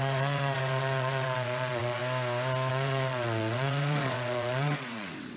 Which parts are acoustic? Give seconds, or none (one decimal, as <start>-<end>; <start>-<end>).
2.0-2.7